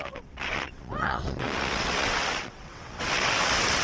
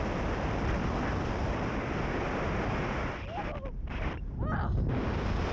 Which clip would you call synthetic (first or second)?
first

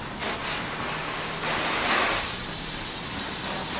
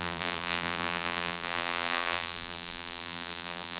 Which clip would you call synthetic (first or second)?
second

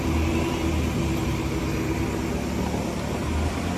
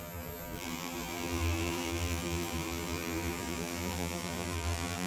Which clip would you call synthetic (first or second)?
second